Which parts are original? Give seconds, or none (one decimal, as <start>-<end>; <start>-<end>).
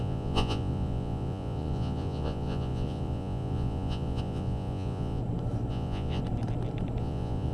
5.2-5.7; 6.2-7.0